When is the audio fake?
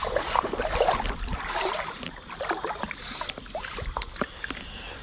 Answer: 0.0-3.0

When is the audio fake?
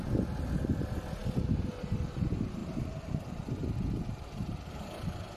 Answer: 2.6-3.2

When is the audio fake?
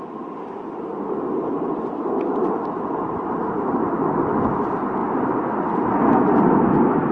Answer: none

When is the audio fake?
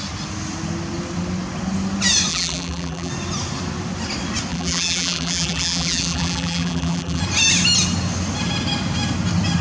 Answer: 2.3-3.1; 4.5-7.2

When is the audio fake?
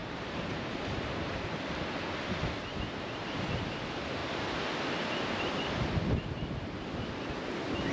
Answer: 0.0-1.2; 2.7-3.3